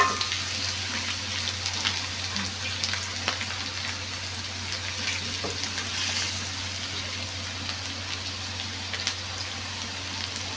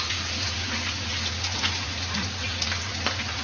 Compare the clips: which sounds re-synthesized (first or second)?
second